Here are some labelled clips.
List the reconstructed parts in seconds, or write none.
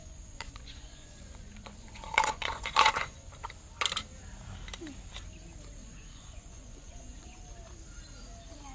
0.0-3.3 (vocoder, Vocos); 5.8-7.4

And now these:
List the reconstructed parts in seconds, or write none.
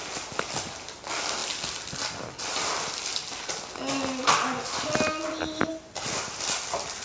none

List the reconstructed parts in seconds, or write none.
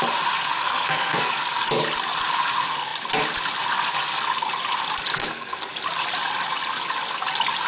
0.6-1.3 (codec, SNAC); 5.2-5.7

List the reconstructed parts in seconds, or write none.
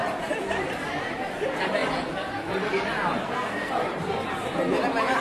3.2-3.7 (codec, SNAC)